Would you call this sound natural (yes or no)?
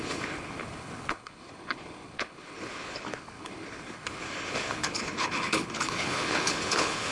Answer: no